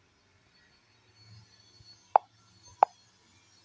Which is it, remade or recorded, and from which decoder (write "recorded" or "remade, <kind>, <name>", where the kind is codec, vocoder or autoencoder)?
recorded